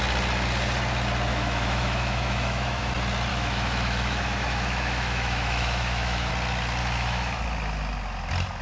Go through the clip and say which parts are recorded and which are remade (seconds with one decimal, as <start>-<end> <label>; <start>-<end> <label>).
0.0-1.3 recorded; 1.3-2.9 remade; 2.9-3.3 recorded; 3.3-6.3 remade; 6.3-6.8 recorded; 6.8-7.4 remade; 7.4-8.6 recorded